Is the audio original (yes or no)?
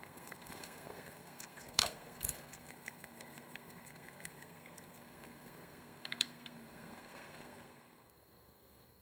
no